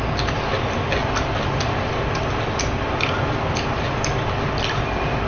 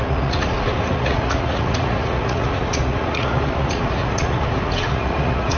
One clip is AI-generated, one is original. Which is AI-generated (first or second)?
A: second